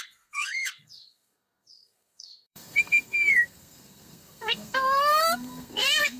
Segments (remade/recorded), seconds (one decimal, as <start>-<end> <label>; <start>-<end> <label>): 0.0-6.2 remade